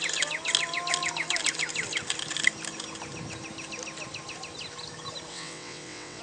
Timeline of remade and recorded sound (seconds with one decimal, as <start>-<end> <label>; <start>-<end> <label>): 0.0-5.3 recorded; 5.3-6.2 remade